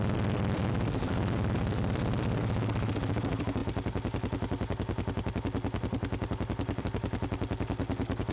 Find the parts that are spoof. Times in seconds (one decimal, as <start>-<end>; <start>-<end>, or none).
none